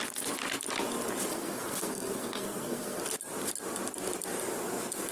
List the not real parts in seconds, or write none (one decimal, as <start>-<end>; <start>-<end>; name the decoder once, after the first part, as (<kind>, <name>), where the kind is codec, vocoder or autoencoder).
1.3-3.0 (codec, SNAC)